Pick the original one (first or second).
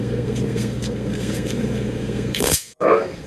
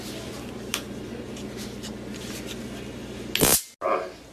second